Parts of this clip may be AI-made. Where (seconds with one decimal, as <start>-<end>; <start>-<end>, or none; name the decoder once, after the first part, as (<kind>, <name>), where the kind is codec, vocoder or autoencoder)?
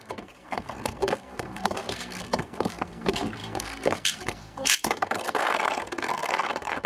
0.0-6.9 (codec, SNAC)